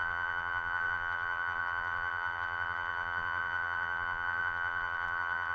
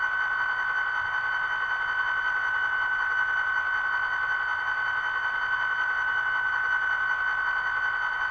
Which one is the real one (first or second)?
second